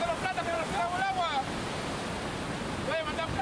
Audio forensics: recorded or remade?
recorded